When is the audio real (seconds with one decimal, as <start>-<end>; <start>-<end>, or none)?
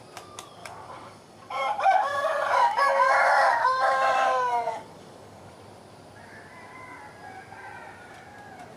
0.0-0.6; 5.5-8.8